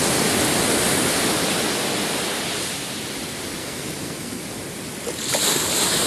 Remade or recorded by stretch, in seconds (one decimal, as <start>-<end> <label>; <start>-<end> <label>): 0.0-3.6 recorded; 3.6-4.4 remade; 4.4-6.1 recorded